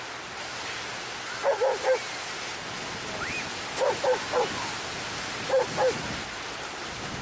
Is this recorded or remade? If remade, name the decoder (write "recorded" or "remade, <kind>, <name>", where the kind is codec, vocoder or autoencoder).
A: recorded